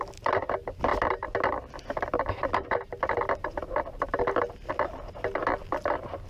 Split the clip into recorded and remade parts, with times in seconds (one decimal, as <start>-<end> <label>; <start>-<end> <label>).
0.0-6.3 recorded